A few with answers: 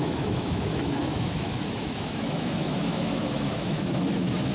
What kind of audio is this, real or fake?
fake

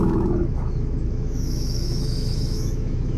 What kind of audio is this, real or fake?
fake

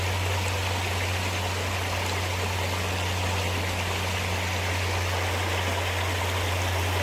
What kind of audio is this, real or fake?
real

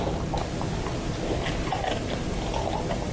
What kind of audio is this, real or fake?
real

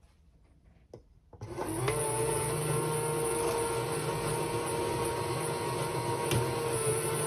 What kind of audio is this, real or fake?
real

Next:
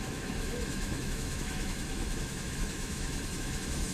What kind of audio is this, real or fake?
fake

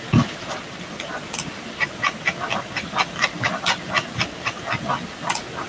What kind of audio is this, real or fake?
real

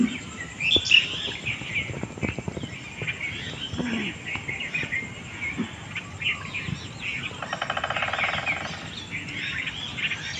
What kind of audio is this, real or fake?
real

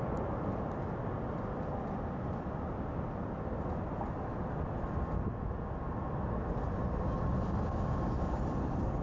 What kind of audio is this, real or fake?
real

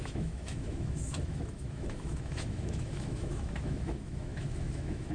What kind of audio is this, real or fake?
fake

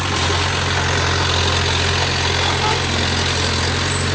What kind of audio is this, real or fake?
real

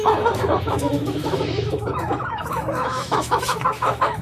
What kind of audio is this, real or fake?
fake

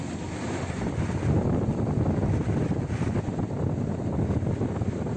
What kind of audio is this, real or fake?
real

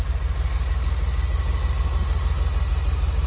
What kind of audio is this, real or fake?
real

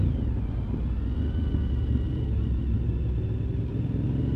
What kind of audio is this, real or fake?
real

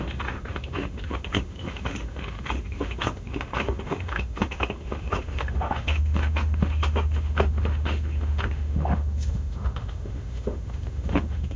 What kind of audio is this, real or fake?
fake